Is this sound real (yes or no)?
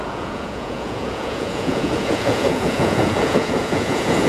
no